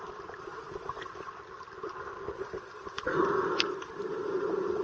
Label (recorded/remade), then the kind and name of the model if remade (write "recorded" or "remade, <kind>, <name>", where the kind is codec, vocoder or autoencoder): recorded